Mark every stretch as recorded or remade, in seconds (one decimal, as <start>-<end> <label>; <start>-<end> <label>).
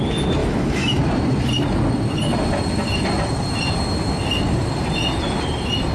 0.0-0.4 recorded; 0.4-1.0 remade; 1.0-5.9 recorded